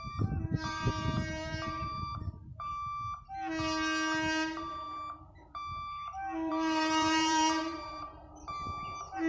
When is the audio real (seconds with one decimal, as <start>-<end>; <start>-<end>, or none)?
2.7-6.5; 8.2-9.3